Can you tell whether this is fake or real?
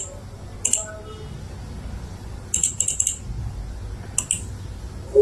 real